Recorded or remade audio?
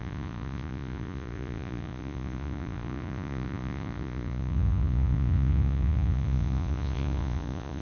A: remade